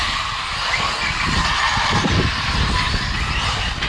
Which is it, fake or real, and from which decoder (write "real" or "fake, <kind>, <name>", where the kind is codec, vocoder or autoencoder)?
real